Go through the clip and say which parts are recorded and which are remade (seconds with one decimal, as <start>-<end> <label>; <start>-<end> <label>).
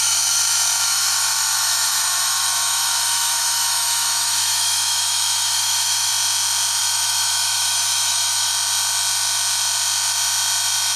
0.0-6.1 remade; 6.1-6.8 recorded; 6.8-8.5 remade; 8.5-11.0 recorded